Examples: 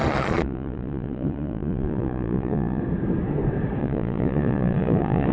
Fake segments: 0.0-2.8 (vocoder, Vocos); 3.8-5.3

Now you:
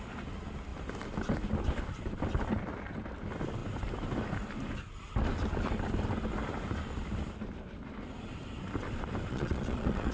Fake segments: 9.3-10.1 (vocoder, Vocos)

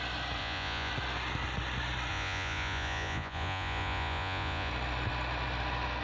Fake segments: 0.4-0.9 (vocoder, Vocos); 2.1-4.7

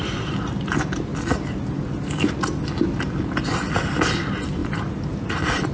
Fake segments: none

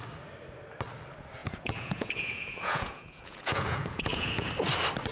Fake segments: 1.4-4.5 (vocoder, Vocos)